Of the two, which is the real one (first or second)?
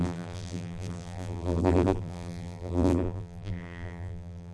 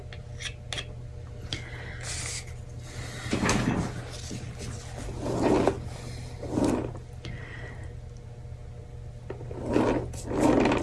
second